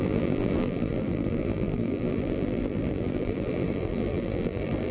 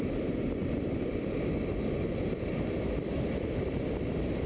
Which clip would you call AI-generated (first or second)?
first